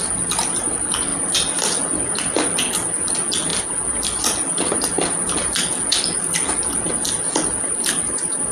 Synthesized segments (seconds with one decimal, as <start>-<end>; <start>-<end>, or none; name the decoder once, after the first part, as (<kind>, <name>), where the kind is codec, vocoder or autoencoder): none